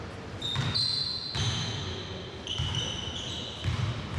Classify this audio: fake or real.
real